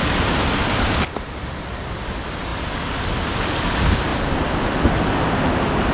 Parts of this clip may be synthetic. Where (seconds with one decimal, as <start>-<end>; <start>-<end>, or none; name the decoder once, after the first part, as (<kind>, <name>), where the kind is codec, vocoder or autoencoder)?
none